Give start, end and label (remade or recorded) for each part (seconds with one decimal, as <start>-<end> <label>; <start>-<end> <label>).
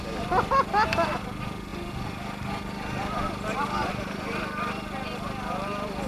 0.0-6.1 recorded